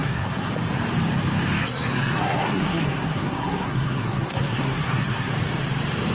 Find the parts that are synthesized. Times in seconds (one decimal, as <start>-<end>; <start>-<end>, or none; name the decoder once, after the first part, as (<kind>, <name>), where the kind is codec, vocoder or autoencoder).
0.0-0.5 (codec, SNAC); 1.6-5.3

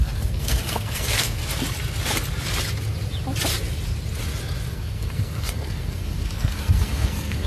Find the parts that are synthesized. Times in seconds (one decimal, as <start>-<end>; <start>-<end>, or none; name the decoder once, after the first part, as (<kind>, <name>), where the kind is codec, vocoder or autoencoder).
0.0-1.4 (codec, SNAC); 4.7-7.5

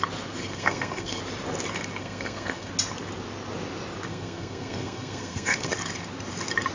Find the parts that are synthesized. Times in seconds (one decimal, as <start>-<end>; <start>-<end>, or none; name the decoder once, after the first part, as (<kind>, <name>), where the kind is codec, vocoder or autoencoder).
0.4-1.2 (codec, SNAC); 2.0-2.7; 4.1-5.7

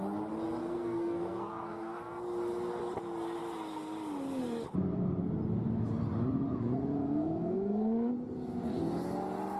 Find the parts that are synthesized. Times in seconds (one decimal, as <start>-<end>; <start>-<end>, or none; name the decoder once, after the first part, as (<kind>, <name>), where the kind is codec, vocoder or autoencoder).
0.6-2.0 (codec, SNAC); 7.0-8.1

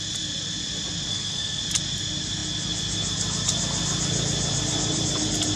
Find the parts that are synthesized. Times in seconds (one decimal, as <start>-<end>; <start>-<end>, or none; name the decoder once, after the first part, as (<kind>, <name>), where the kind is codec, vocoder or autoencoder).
1.1-1.6 (codec, SNAC)

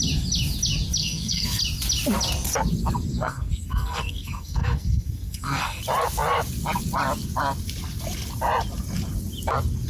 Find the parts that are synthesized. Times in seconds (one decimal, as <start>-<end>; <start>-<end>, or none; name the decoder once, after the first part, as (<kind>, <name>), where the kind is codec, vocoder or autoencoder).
1.0-1.6 (codec, SNAC); 3.1-5.8